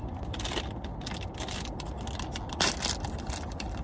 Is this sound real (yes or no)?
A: yes